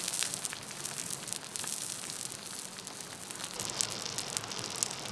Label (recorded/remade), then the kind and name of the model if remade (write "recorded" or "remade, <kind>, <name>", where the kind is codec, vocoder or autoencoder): recorded